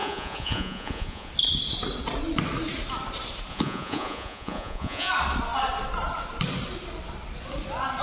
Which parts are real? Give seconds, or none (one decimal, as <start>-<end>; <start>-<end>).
1.3-3.5; 5.1-8.0